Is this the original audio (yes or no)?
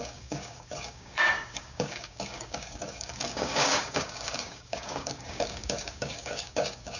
no